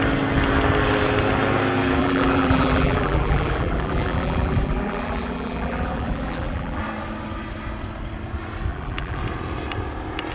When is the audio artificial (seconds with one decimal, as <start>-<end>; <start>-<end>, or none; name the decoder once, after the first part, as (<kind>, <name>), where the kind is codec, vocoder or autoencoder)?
2.0-6.8 (vocoder, BigVGAN v2); 8.7-9.2